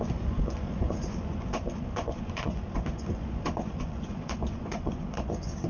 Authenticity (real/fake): fake